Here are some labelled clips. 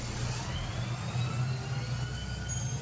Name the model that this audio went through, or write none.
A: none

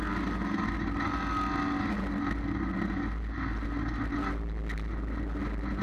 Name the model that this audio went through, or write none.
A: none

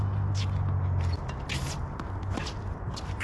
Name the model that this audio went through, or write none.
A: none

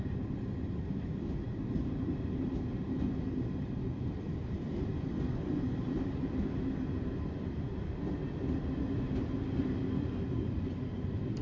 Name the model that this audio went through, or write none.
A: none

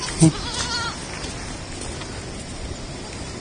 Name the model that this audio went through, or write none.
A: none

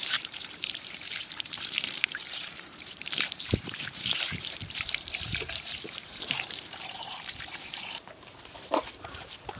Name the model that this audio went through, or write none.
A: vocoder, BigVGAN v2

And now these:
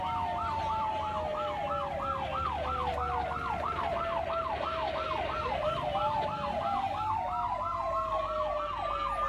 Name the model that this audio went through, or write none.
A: none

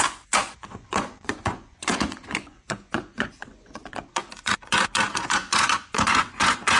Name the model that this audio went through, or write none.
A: vocoder, Vocos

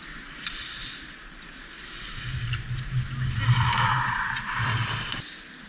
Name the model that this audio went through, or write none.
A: none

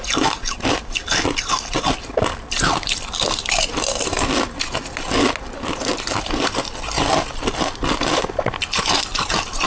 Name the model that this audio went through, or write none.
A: none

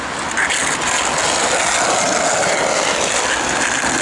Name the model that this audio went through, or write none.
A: none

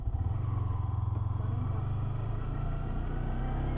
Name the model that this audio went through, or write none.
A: none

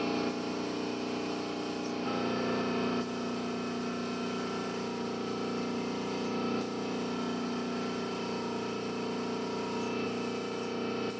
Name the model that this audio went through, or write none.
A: none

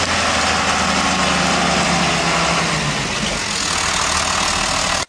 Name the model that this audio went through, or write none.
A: none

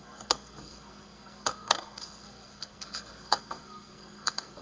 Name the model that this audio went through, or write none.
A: codec, SNAC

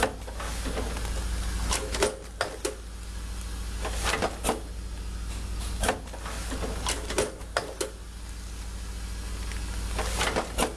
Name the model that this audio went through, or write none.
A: none